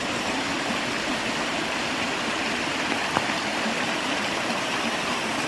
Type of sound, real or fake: real